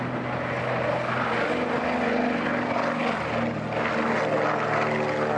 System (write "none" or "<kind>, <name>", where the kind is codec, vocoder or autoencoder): none